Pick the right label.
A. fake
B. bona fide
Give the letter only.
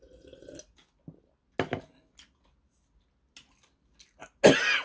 B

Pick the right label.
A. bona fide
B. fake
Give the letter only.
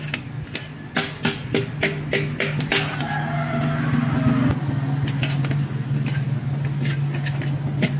A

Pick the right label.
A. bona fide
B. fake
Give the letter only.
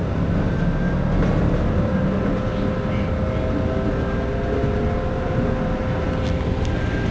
A